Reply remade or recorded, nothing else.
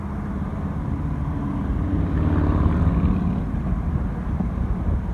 recorded